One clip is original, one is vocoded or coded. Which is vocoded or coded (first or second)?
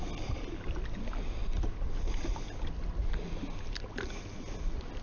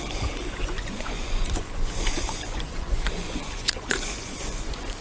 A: second